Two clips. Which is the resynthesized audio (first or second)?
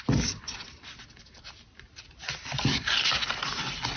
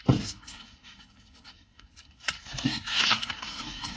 second